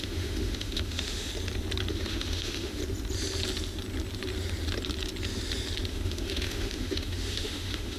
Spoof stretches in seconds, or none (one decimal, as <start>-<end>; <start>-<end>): 0.0-1.3; 1.9-2.8; 5.9-8.0